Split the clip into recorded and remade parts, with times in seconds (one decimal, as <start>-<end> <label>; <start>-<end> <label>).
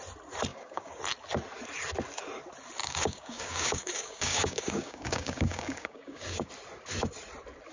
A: 0.0-0.5 recorded; 0.5-1.0 remade; 1.0-2.8 recorded; 2.8-6.5 remade; 6.5-7.7 recorded